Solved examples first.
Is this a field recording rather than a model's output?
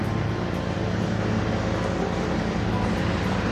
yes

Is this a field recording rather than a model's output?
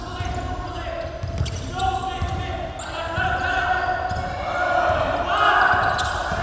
yes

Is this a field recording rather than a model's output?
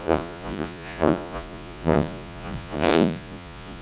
no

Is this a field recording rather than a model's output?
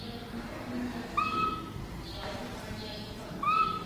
yes